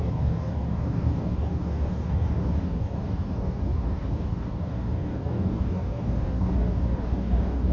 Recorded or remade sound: remade